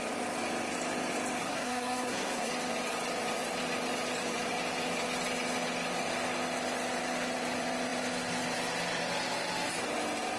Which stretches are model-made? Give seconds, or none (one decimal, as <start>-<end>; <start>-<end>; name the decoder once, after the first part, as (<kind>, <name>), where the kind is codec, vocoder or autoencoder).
1.4-2.5 (codec, SNAC)